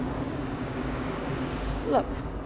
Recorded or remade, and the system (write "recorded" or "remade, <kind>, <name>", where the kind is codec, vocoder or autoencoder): remade, codec, DAC